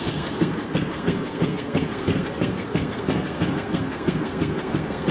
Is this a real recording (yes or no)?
no